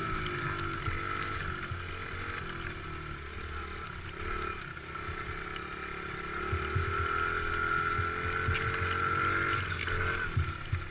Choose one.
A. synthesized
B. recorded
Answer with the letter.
B